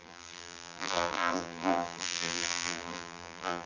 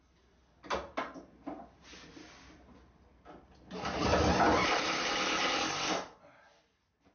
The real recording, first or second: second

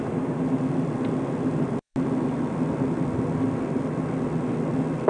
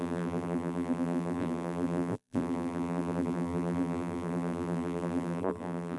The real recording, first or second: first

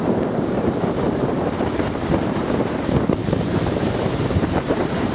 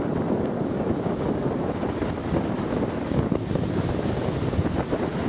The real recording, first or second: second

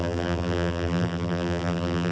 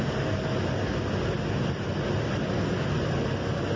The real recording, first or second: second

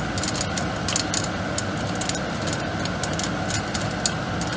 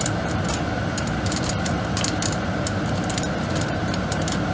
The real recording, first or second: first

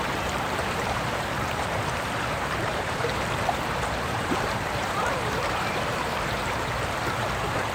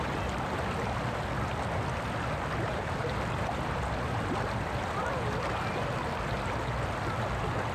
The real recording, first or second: second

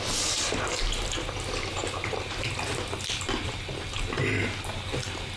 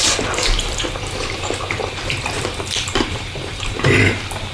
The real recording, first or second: first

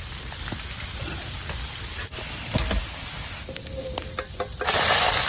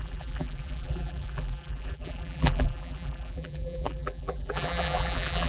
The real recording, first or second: first